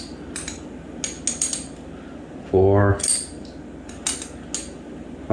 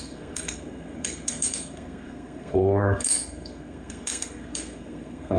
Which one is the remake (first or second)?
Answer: second